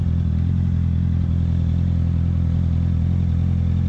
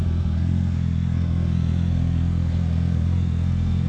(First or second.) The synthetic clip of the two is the second